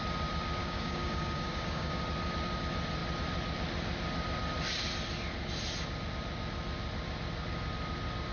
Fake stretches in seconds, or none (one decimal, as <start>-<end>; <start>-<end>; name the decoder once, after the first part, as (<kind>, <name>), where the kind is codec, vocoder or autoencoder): 0.6-2.0 (codec, DAC)